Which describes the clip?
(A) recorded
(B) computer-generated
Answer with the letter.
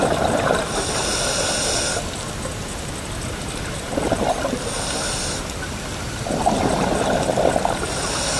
A